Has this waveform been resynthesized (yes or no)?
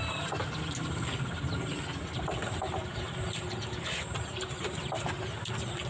no